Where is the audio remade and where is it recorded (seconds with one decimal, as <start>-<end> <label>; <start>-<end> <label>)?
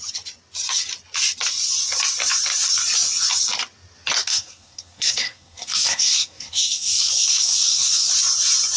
0.0-4.3 recorded; 4.3-8.1 remade; 8.1-8.8 recorded